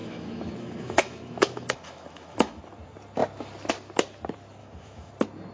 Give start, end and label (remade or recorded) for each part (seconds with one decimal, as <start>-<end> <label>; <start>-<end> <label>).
0.0-2.6 remade; 2.6-4.6 recorded; 4.6-5.1 remade; 5.1-5.5 recorded